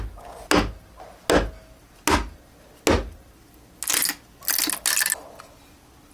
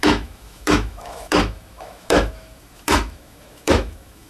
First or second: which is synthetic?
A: second